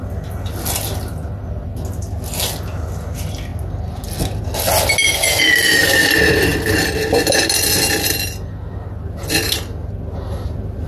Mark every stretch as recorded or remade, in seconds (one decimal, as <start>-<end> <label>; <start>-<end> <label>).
0.0-10.9 recorded